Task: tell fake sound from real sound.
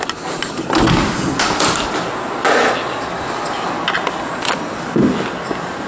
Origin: real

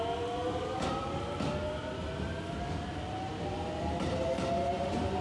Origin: real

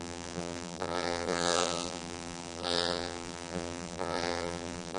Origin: fake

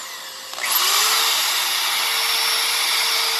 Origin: real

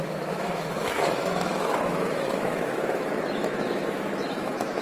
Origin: fake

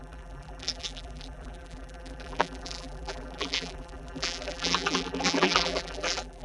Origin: fake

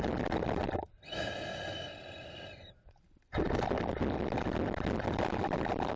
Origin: real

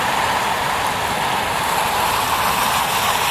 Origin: real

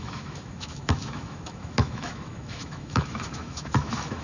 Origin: fake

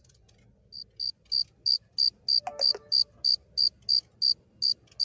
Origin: real